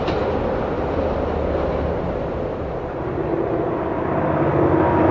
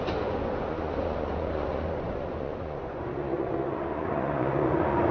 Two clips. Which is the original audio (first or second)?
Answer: first